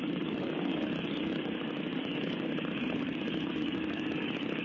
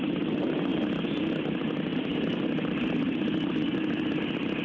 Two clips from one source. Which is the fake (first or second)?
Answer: first